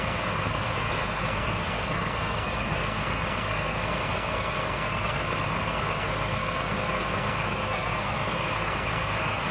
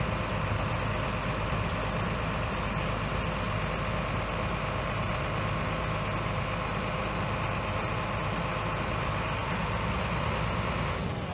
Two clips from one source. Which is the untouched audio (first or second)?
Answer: second